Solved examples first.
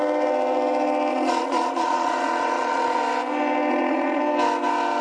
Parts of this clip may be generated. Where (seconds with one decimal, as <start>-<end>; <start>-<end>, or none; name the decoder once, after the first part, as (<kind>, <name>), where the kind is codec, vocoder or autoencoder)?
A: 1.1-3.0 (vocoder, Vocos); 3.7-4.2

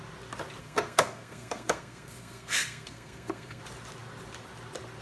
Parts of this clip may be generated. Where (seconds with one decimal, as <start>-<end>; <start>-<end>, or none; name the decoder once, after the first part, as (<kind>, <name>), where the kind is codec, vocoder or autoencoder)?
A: 0.6-3.6 (codec, SNAC)

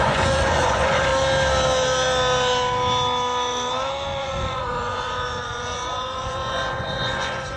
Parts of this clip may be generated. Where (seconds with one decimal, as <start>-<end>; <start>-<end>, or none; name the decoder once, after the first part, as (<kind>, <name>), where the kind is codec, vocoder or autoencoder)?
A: 0.0-1.1 (vocoder, Vocos); 4.2-7.6